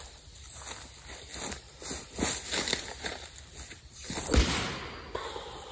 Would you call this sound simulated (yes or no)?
no